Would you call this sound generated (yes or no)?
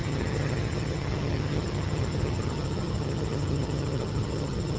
yes